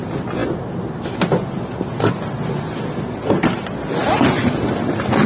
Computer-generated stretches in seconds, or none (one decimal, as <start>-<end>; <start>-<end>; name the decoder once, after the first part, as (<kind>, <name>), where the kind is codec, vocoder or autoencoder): none